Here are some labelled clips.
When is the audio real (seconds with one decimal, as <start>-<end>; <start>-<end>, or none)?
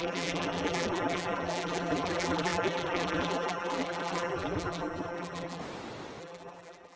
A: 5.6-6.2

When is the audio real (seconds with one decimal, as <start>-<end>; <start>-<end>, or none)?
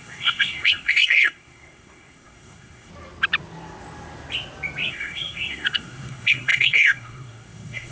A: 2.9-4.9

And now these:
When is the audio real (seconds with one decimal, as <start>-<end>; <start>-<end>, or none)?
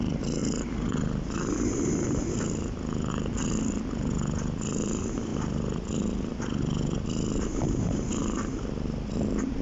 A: 0.0-9.6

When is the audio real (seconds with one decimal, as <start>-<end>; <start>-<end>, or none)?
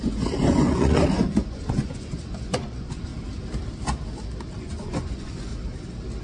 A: 3.1-4.6; 5.5-6.2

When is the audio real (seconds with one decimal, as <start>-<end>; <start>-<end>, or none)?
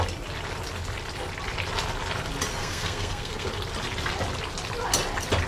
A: 0.0-2.6; 3.5-5.5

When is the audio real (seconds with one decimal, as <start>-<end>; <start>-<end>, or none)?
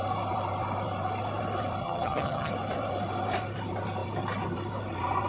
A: 0.0-1.8; 2.5-5.3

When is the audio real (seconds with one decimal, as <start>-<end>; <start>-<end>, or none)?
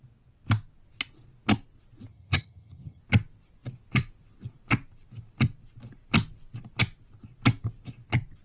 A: 0.0-2.1; 3.0-8.4